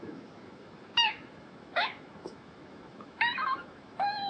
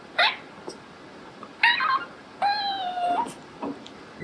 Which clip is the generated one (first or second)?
first